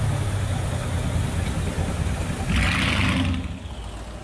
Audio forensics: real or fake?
real